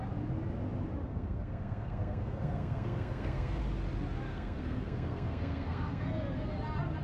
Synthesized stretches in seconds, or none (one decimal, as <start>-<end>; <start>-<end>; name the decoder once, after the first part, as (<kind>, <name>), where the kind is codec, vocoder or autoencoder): 1.0-3.6 (codec, SNAC); 4.3-6.5